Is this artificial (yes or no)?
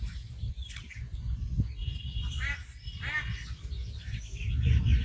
yes